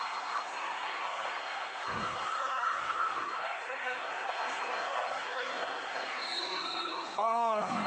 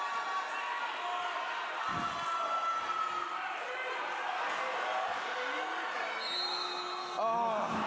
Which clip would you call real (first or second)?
second